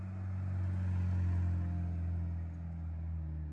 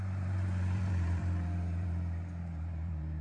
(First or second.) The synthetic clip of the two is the second